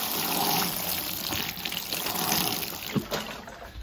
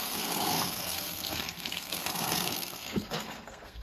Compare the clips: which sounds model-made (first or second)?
second